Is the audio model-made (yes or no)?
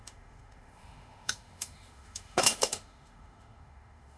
yes